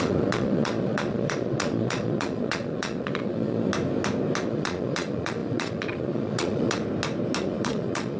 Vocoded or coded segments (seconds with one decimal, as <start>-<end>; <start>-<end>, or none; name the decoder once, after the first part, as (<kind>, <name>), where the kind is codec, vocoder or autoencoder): 0.0-3.7 (vocoder, Vocos); 4.4-6.8; 7.4-8.2